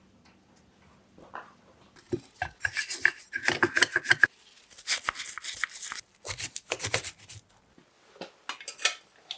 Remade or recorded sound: recorded